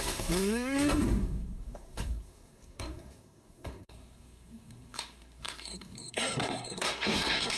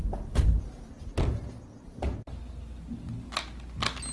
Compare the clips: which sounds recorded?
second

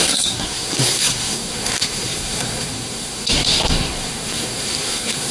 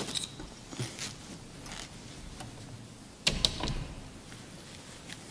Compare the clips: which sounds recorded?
second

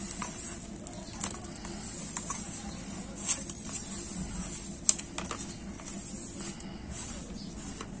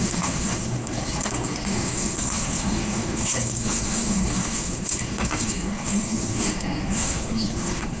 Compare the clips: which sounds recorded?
first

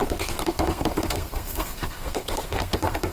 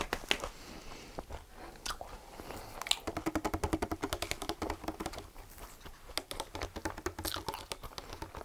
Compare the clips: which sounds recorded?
second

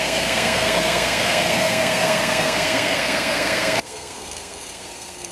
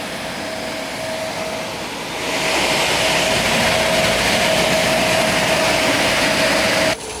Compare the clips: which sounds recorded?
second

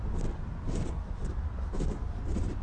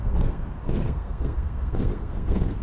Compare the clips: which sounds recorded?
first